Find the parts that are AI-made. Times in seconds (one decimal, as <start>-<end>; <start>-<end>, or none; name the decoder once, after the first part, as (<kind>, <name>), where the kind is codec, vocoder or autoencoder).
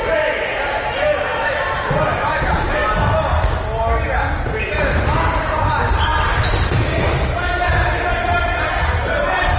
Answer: 0.0-1.3 (vocoder, BigVGAN v2); 2.4-2.8; 4.6-9.6